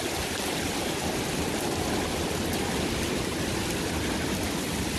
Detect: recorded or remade recorded